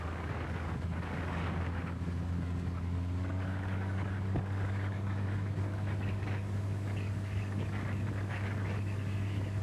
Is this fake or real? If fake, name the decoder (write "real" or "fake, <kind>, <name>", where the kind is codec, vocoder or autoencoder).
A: fake, codec, DAC